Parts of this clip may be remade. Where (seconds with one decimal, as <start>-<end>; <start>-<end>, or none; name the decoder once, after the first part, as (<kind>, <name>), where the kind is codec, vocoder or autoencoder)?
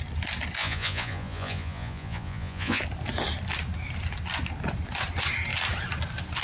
0.6-2.8 (vocoder, Vocos)